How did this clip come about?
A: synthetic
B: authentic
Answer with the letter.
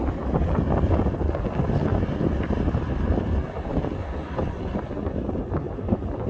B